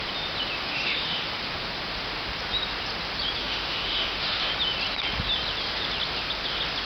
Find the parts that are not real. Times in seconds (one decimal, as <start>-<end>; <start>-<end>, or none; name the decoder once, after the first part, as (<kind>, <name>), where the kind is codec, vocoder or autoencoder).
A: 0.6-1.3 (autoencoder, DAC-VAE); 3.4-4.5